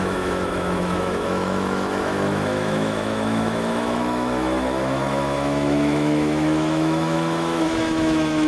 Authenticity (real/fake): fake